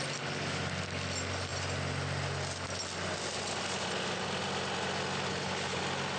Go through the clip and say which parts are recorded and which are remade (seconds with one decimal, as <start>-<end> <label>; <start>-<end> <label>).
0.0-5.3 recorded; 5.3-5.8 remade; 5.8-6.2 recorded